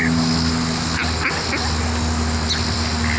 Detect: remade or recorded recorded